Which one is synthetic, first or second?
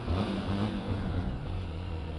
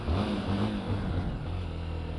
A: first